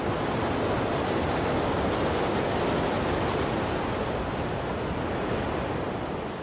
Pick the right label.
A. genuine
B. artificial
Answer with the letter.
A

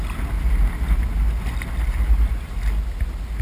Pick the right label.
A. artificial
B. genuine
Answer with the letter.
B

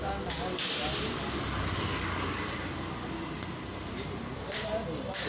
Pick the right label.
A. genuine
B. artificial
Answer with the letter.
A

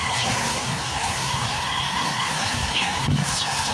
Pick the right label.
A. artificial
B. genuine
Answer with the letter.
A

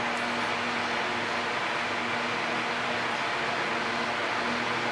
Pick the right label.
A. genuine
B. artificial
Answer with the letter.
A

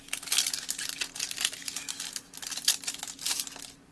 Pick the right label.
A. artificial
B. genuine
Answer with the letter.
B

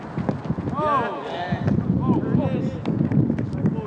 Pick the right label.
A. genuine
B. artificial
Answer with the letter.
A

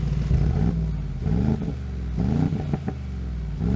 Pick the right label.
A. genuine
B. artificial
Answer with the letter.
A